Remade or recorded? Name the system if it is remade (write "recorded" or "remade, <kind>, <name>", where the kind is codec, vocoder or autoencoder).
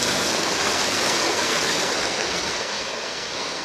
remade, codec, SNAC